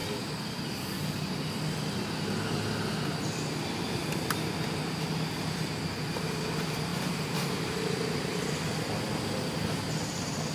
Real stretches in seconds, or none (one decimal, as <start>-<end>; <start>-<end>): 0.0-6.9; 8.0-10.5